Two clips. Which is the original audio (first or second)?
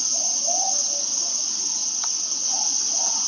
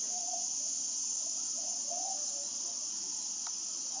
first